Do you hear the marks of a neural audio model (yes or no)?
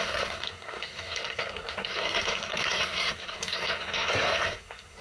yes